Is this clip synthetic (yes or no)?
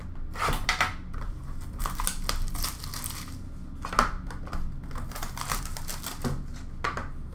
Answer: no